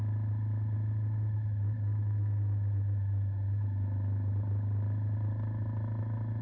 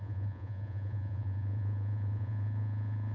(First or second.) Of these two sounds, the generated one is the second